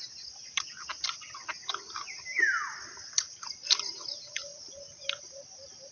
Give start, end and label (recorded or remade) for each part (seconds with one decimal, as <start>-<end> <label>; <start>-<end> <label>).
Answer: 0.0-5.9 recorded